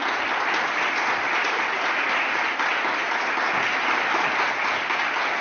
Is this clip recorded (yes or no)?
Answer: yes